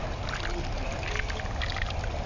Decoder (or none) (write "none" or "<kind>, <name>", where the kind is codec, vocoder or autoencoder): none